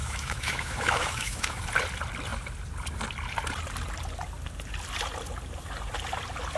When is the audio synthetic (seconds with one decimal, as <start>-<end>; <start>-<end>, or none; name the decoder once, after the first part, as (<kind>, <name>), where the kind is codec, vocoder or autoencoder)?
0.0-1.6 (autoencoder, DAC-VAE)